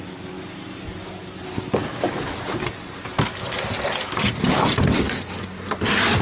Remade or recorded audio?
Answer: recorded